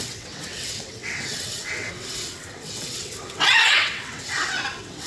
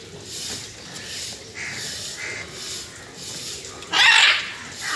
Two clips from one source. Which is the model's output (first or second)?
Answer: first